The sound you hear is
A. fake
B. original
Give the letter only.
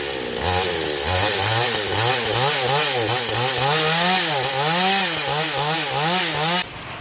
B